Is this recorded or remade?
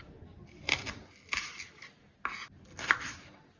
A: recorded